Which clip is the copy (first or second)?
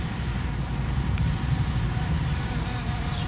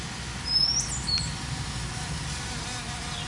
first